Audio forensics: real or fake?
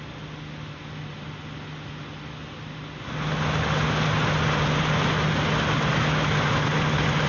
real